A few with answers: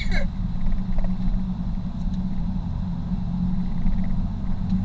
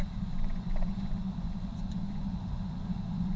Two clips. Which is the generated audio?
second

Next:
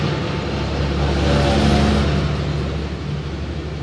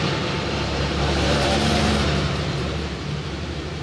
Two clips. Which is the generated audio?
second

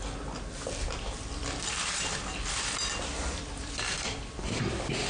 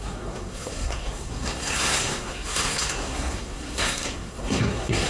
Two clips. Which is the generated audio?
second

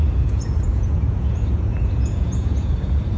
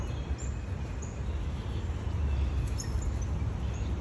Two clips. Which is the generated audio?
first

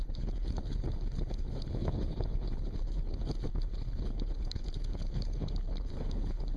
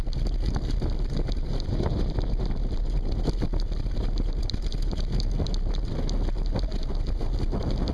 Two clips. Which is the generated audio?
first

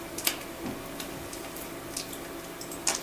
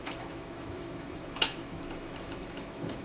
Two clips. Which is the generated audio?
second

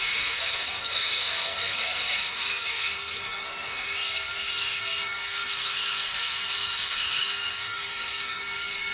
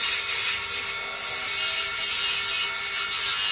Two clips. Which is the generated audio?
first